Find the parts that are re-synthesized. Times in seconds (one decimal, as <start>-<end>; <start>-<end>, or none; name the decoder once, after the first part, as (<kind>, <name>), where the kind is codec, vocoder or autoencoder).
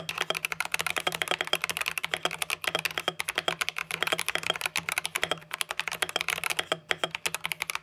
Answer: none